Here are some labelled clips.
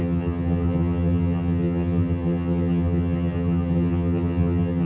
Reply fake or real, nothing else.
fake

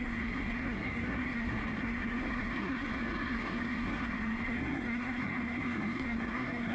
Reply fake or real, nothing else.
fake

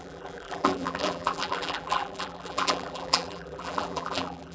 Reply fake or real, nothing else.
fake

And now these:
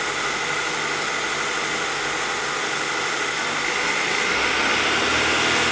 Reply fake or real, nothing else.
real